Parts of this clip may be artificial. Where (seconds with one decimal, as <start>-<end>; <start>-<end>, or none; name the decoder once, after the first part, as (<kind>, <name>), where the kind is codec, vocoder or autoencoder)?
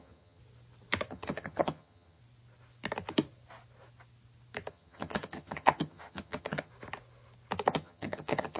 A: 0.0-0.4 (vocoder, HiFi-GAN); 1.1-2.2; 4.7-6.7; 7.7-8.6